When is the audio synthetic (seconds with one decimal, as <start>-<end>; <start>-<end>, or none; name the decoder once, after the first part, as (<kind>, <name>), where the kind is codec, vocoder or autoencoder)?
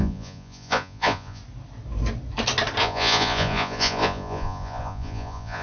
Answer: 0.0-1.4 (vocoder, Vocos); 2.8-5.6